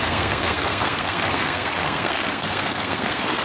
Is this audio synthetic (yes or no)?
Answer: yes